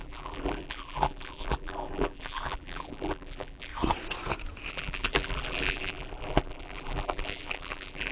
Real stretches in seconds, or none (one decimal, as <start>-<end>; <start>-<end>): 3.7-4.7